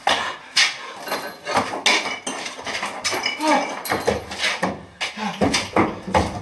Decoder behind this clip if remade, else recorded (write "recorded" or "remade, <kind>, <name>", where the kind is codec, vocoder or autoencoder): recorded